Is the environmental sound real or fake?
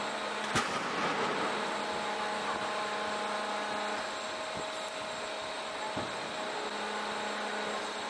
real